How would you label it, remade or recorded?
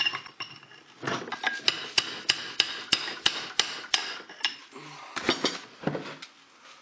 recorded